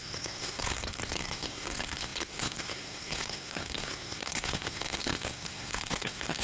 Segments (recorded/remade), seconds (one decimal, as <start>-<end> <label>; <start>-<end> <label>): 0.0-6.4 remade